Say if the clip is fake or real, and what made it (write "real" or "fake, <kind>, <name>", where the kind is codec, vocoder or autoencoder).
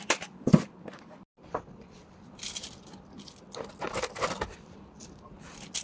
real